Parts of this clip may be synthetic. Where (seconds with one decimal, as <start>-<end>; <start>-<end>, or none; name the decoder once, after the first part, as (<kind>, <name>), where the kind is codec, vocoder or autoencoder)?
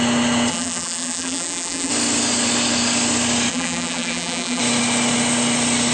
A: 0.5-1.9 (vocoder, BigVGAN v2); 3.5-4.6